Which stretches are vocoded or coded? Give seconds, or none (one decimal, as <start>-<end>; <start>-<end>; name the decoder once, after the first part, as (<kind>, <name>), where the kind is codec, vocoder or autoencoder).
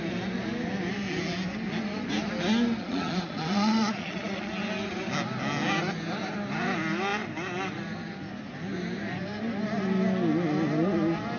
2.8-4.5 (vocoder, Vocos)